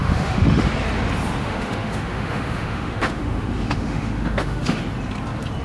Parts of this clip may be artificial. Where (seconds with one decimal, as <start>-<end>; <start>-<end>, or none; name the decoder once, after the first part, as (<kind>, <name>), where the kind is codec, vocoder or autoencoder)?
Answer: 0.0-0.7 (autoencoder, DAC-VAE); 1.4-4.8